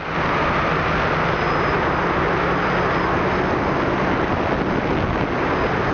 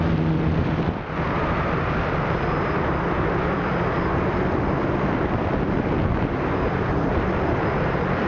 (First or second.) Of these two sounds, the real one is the first